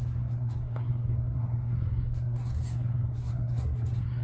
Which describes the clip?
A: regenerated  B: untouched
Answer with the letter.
A